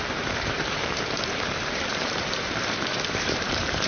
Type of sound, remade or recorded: remade